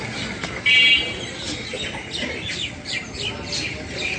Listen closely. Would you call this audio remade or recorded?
recorded